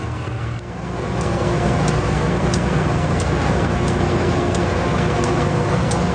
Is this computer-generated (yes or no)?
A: yes